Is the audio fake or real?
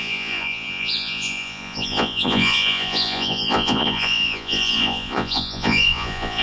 fake